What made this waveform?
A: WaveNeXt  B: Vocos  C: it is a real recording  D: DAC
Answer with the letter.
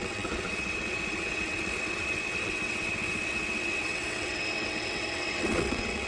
A